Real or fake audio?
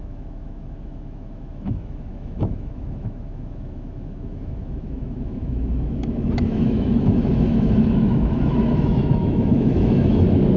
fake